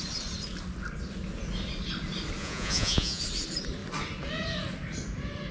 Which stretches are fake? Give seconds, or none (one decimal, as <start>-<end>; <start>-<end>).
2.4-3.2